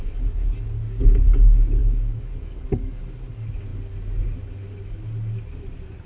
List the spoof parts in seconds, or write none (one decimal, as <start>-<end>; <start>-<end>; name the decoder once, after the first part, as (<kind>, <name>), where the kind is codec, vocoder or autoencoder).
1.8-3.0 (codec, DAC)